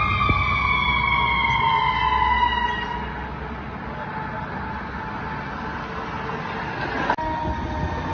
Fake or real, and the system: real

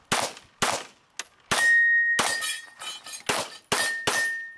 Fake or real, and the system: real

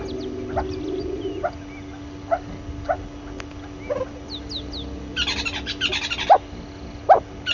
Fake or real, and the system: real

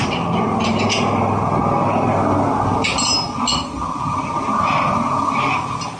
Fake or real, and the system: real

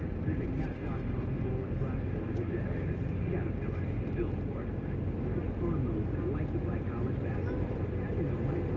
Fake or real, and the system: real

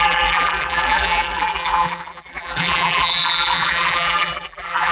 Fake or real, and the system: fake, vocoder, BigVGAN v2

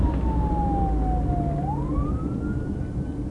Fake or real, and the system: real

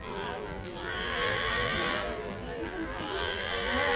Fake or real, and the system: fake, vocoder, BigVGAN v2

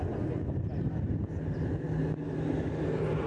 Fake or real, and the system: real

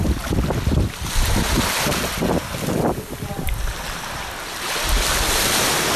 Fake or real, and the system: real